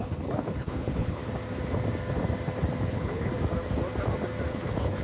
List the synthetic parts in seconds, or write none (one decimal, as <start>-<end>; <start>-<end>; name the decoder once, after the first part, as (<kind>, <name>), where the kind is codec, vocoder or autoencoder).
0.0-1.2 (codec, HILCodec); 2.9-3.3; 4.5-5.0